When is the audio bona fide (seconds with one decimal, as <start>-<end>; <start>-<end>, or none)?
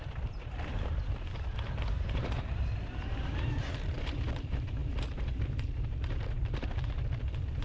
none